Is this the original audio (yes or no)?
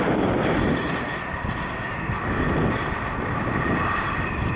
yes